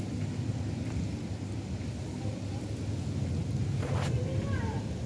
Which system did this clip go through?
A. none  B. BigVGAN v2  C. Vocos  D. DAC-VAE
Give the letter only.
A